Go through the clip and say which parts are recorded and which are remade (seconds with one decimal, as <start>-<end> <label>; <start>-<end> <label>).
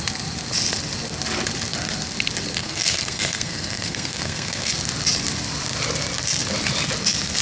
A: 0.0-2.6 recorded; 2.6-4.7 remade; 4.7-7.4 recorded